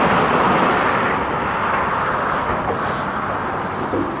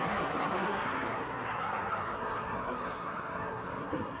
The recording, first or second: first